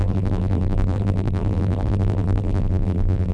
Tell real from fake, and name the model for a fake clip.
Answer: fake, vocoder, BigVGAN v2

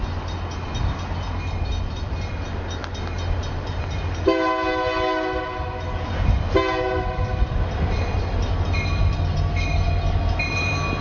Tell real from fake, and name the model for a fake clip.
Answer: real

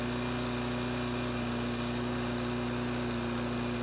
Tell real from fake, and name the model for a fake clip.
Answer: real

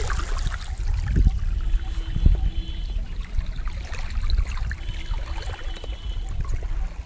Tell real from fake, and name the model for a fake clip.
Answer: real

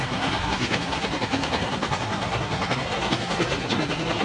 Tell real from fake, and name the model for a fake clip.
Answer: fake, codec, SNAC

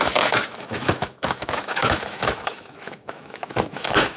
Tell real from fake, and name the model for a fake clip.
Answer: fake, autoencoder, DAC-VAE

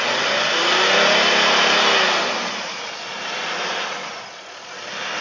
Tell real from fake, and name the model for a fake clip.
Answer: real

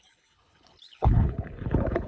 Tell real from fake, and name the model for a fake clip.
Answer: fake, codec, HILCodec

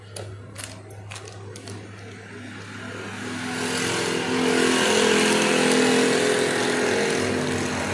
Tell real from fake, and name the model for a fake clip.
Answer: real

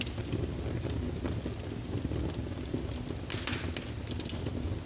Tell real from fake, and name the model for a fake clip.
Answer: real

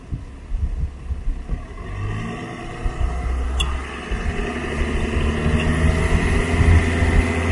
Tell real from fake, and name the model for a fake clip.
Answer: real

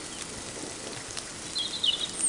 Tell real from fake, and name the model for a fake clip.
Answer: real